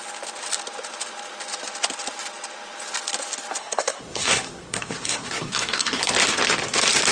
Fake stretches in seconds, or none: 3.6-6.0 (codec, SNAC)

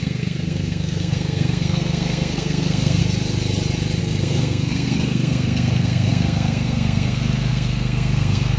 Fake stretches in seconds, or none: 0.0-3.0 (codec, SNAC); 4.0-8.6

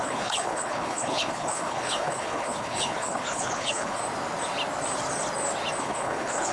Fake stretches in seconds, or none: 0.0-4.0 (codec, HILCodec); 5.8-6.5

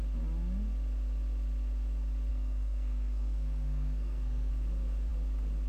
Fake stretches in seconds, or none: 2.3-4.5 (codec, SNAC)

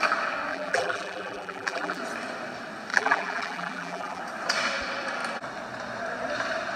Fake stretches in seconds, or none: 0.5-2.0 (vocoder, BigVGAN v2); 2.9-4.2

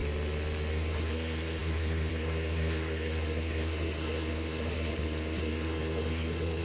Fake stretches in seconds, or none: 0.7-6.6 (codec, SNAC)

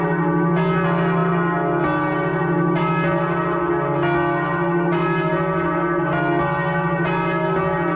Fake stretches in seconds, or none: none

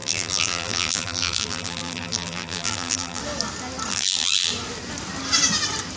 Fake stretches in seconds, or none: 0.0-3.2 (vocoder, BigVGAN v2); 3.9-4.5